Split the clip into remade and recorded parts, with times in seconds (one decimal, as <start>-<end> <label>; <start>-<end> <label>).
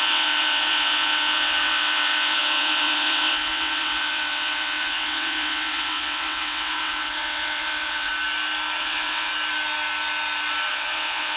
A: 0.0-8.1 remade; 8.1-8.8 recorded; 8.8-9.3 remade; 9.3-10.7 recorded; 10.7-11.4 remade